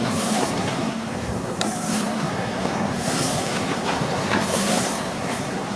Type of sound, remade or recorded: remade